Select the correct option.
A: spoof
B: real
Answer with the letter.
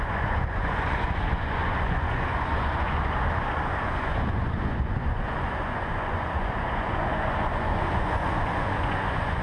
A